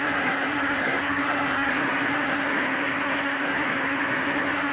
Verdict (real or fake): fake